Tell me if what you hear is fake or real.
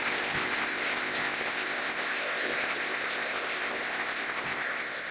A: fake